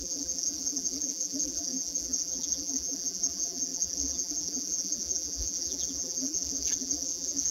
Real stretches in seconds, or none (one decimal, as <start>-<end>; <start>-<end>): none